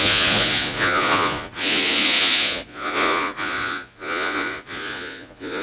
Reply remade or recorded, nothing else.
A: remade